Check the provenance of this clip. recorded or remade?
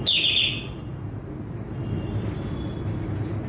recorded